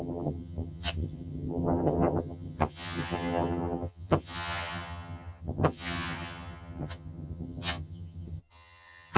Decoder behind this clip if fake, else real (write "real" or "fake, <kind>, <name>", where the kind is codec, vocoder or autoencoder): fake, vocoder, HiFi-GAN